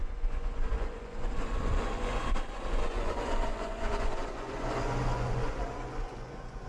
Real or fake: fake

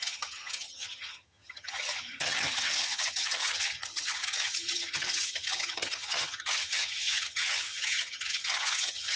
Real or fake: fake